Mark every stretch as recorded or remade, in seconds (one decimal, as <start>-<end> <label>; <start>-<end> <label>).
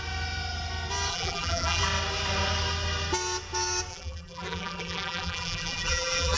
0.0-1.1 recorded; 1.1-1.8 remade; 1.8-3.9 recorded; 3.9-6.4 remade